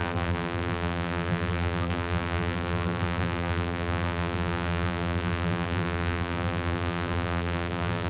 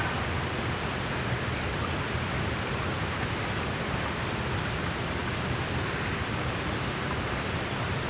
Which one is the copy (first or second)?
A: first